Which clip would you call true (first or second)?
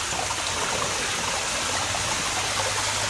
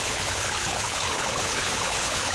first